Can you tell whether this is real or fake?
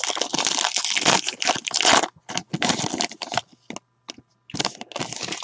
real